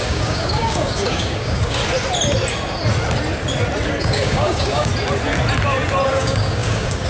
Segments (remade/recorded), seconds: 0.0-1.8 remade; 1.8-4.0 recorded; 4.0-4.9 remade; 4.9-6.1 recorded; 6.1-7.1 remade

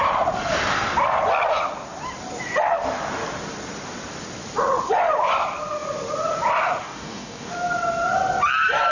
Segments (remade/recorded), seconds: 0.0-6.8 recorded; 6.8-7.5 remade; 7.5-8.9 recorded

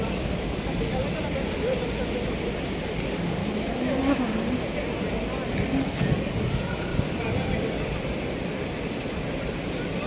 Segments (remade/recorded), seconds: 0.0-0.9 remade; 0.9-2.9 recorded; 2.9-3.4 remade; 3.4-5.9 recorded; 5.9-6.9 remade; 6.9-10.1 recorded

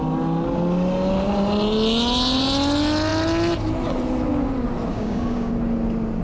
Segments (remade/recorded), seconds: 0.0-4.9 recorded; 4.9-5.5 remade; 5.5-6.2 recorded

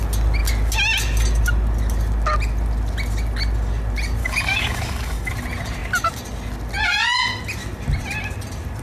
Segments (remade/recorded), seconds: 0.0-4.2 recorded; 4.2-5.3 remade; 5.3-8.8 recorded

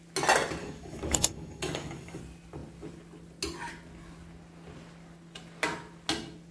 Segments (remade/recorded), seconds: 0.0-0.6 recorded; 0.6-2.2 remade; 2.2-6.5 recorded

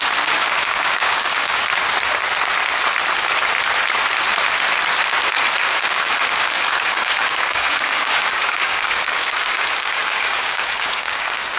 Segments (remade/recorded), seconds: 0.0-1.7 remade; 1.7-5.6 recorded; 5.6-11.6 remade